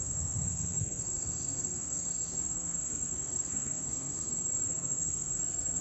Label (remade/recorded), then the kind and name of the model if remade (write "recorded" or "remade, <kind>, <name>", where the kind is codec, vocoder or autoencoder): remade, codec, SNAC